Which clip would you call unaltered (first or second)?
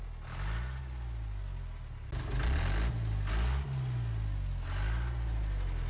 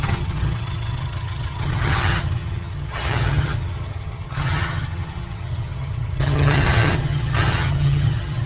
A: first